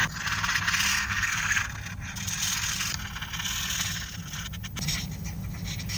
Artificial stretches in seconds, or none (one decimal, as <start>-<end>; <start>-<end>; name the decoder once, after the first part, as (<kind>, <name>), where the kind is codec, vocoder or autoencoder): 0.9-1.6 (codec, SNAC)